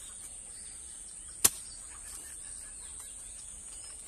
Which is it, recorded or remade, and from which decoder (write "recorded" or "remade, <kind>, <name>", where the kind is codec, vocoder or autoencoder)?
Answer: recorded